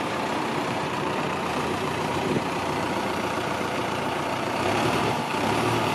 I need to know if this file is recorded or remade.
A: remade